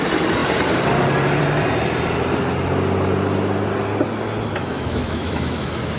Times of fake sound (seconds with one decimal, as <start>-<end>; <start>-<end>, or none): 4.6-6.0